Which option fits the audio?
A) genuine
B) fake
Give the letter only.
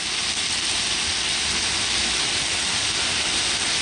A